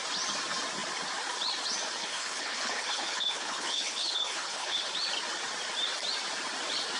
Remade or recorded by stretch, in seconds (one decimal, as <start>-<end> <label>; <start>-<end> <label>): 0.0-2.0 recorded; 2.0-4.9 remade; 4.9-7.0 recorded